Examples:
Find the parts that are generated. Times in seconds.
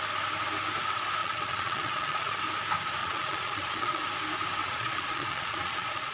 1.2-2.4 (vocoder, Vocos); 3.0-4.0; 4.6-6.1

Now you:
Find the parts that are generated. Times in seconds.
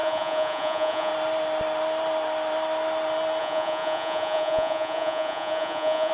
0.0-1.1 (vocoder, Vocos); 3.4-6.1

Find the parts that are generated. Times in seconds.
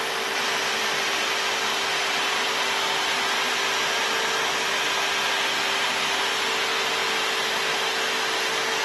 none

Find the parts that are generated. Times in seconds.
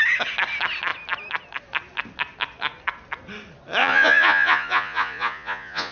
3.8-5.9 (vocoder, Vocos)